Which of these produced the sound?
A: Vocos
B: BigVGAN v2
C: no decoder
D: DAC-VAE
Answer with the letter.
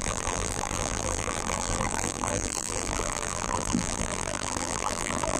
B